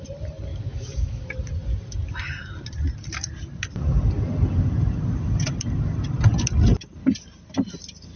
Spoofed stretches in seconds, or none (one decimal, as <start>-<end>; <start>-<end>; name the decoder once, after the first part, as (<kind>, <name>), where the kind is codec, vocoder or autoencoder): 0.5-1.2 (autoencoder, DAC-VAE)